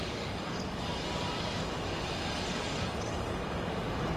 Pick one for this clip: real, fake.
fake